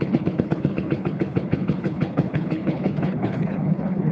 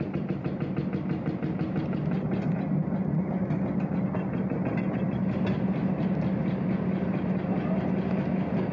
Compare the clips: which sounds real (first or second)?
second